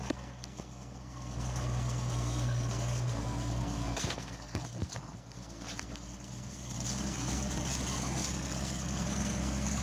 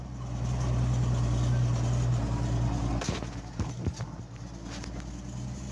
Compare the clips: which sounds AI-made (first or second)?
first